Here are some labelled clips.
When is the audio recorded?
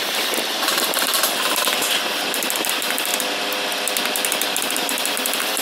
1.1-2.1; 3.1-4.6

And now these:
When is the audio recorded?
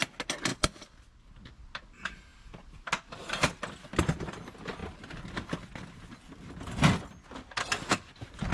0.0-0.5; 1.3-2.3; 4.0-8.5